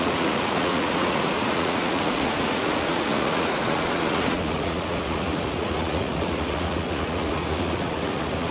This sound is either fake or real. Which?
fake